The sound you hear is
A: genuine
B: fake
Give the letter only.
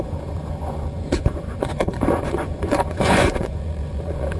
B